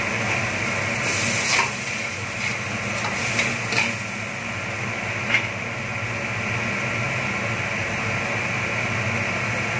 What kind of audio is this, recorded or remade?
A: recorded